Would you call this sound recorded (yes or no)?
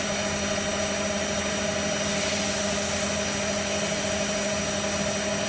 yes